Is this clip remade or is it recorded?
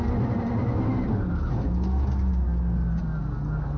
recorded